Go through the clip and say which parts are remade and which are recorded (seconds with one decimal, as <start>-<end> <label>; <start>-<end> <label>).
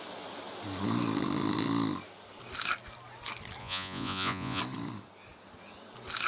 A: 0.0-3.6 recorded; 3.6-4.6 remade; 4.6-6.3 recorded